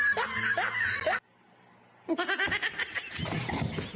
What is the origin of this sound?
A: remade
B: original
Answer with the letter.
B